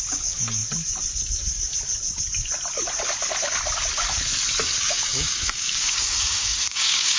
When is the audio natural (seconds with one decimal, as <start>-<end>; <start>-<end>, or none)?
0.6-4.8